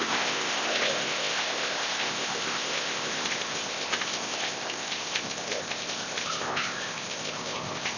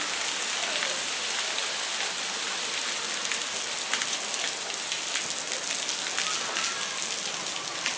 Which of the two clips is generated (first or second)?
first